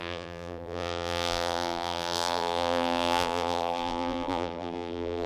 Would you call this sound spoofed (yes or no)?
yes